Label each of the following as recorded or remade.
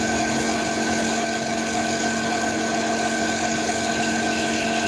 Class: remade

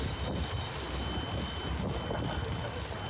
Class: recorded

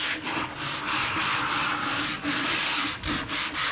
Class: recorded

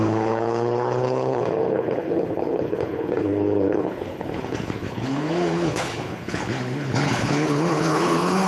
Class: remade